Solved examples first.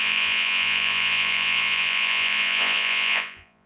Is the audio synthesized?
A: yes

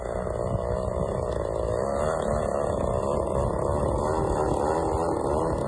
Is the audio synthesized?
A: no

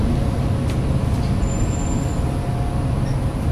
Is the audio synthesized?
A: no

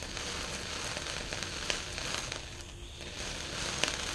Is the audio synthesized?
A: no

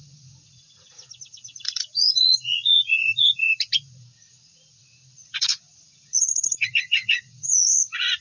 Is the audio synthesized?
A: yes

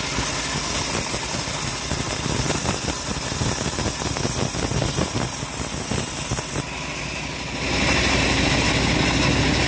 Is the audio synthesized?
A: no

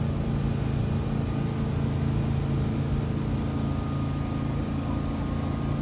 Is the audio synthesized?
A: no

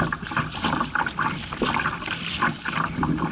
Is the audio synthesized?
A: no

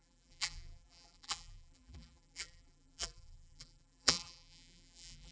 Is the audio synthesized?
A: yes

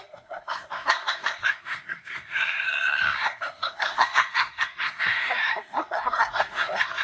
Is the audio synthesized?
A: yes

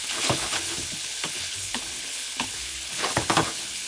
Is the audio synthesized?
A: yes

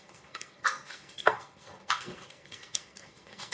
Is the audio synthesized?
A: yes